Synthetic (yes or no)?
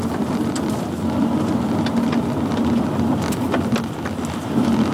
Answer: no